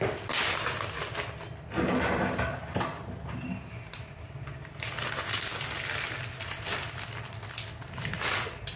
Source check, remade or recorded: recorded